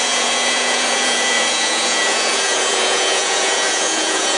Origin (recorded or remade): remade